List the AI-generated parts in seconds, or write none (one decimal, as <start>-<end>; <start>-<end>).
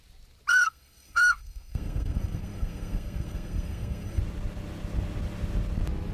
0.5-4.2